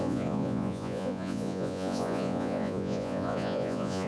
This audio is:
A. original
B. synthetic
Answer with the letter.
B